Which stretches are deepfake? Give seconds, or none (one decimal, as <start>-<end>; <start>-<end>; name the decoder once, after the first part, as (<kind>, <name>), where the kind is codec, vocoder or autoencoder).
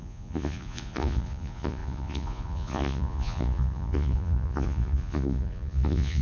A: 0.0-6.2 (vocoder, Vocos)